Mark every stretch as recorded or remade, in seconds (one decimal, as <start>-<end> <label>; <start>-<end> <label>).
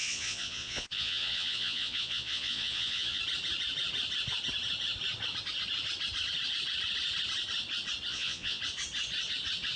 0.0-3.2 remade; 3.2-8.1 recorded; 8.1-8.6 remade; 8.6-9.8 recorded